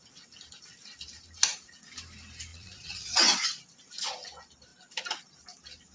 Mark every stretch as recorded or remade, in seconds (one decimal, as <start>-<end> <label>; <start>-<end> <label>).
0.0-2.5 recorded; 2.5-3.6 remade; 3.6-5.9 recorded